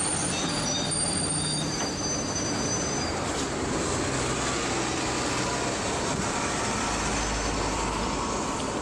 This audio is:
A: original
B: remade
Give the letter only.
A